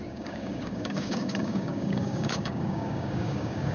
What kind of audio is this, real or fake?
fake